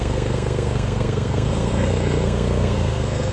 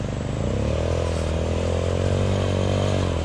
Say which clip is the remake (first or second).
first